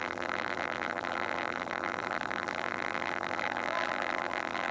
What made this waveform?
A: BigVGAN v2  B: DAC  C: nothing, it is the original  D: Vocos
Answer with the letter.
A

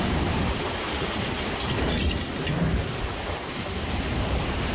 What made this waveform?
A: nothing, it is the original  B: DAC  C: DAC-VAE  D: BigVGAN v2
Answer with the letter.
D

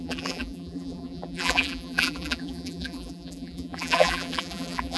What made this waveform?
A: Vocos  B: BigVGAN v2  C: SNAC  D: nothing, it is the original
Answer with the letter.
B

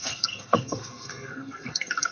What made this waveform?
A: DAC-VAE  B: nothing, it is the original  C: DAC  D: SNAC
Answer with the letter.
D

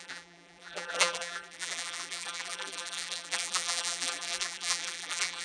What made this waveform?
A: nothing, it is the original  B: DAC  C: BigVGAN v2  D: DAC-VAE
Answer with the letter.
C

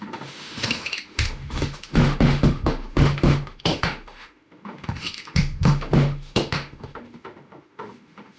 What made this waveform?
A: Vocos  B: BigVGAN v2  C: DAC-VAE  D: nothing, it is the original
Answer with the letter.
C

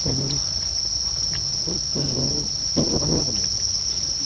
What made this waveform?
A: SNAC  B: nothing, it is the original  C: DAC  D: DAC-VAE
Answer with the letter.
B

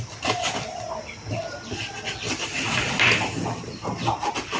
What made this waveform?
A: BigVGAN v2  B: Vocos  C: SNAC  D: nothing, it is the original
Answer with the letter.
A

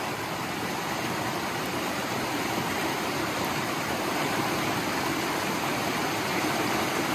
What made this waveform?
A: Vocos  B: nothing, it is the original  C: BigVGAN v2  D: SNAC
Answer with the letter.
C